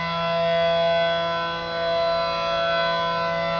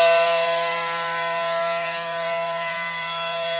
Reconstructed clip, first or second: second